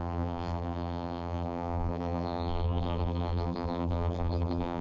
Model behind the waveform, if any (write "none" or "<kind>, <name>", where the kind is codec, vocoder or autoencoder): vocoder, BigVGAN v2